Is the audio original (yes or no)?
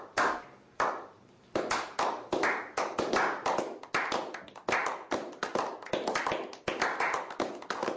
yes